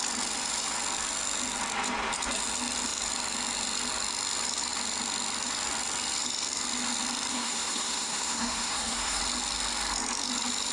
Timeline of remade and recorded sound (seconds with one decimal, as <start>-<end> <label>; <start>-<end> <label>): 0.0-7.3 recorded; 7.3-9.2 remade; 9.2-10.7 recorded